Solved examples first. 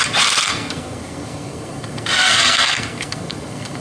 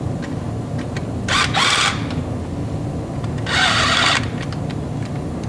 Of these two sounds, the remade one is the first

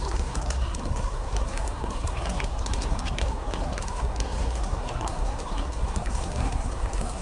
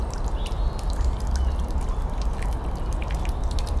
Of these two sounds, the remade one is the first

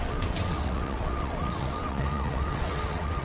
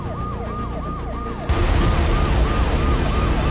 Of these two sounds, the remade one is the first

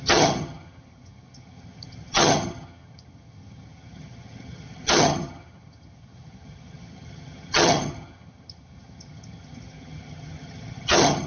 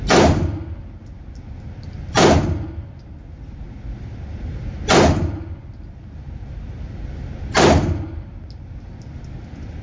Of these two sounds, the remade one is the first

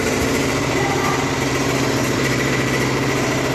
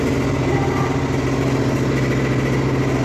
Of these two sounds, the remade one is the first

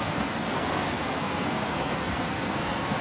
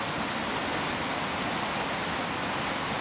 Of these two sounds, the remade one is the first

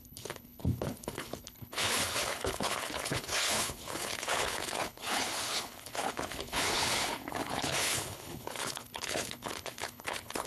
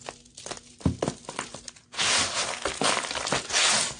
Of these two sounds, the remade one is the first